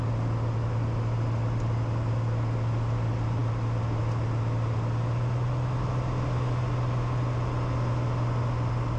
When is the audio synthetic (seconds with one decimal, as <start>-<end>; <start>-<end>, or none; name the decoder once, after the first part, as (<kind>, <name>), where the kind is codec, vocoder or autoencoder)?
none